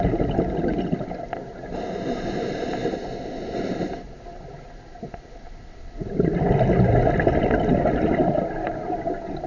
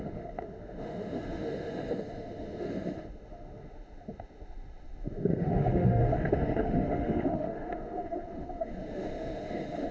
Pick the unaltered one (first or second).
first